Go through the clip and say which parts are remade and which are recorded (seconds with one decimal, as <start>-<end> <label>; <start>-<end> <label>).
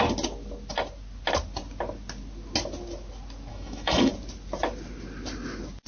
0.0-3.5 recorded; 3.5-4.1 remade; 4.1-5.9 recorded